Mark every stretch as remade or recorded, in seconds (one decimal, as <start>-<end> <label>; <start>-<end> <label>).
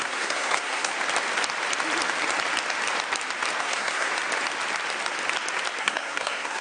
0.0-0.9 remade; 0.9-3.6 recorded; 3.6-4.1 remade; 4.1-5.8 recorded; 5.8-6.6 remade